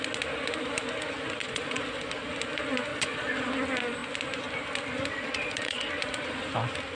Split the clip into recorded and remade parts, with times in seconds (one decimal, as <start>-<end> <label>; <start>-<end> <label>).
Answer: 0.0-1.4 recorded; 1.4-2.2 remade; 2.2-2.9 recorded; 2.9-3.5 remade; 3.5-5.1 recorded; 5.1-5.9 remade; 5.9-6.9 recorded